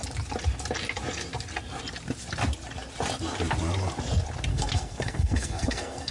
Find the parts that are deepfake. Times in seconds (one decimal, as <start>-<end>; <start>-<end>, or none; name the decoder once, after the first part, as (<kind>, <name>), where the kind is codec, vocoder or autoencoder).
4.5-6.1 (codec, SNAC)